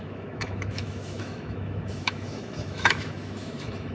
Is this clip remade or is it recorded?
remade